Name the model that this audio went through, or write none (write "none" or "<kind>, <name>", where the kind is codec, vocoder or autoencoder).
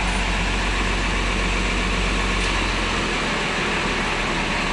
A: none